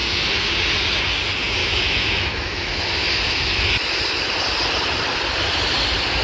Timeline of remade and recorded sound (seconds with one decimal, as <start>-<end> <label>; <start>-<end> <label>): 0.0-1.6 recorded; 1.6-2.7 remade; 2.7-6.2 recorded